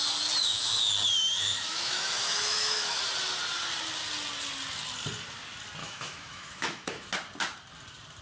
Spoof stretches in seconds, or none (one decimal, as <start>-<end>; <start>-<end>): 0.4-0.9; 1.4-3.0; 5.8-7.1